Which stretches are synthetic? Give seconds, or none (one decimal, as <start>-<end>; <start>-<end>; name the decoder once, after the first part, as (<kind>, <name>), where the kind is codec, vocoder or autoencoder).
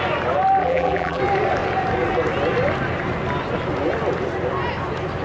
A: 0.6-1.2 (vocoder, BigVGAN v2)